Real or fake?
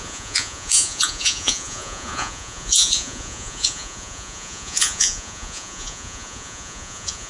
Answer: fake